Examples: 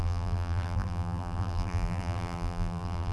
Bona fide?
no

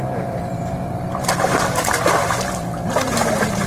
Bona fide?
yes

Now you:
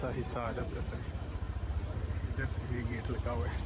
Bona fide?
no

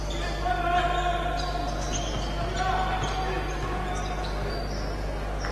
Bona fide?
yes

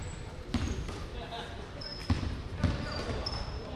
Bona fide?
no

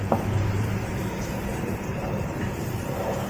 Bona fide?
no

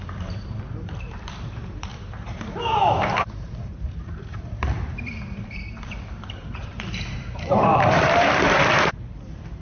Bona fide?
no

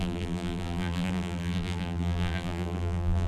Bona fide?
no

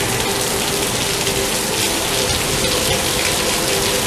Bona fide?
yes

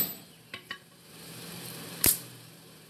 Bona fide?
no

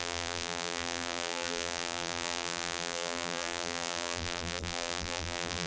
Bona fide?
no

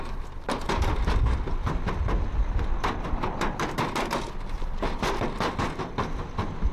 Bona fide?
yes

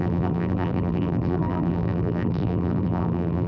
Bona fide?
no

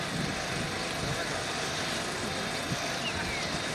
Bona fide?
yes